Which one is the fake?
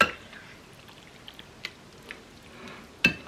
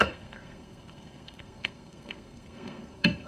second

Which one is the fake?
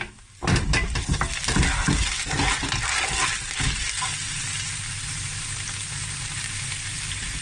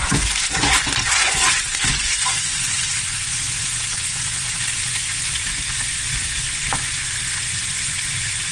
second